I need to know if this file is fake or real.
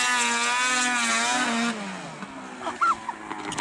real